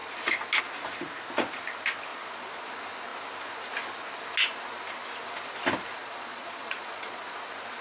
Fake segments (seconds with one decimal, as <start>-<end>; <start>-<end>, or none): 2.1-2.7; 6.0-7.2